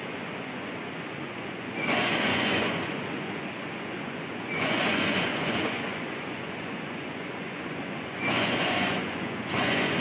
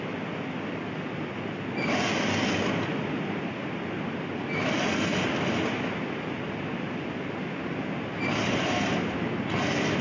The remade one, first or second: first